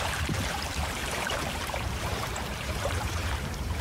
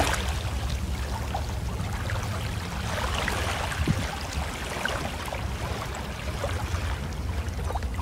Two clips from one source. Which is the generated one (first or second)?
first